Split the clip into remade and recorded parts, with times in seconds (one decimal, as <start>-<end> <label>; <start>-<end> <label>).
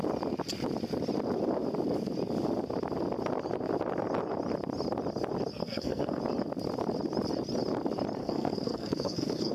0.0-5.6 recorded; 5.6-6.2 remade; 6.2-8.2 recorded; 8.2-9.5 remade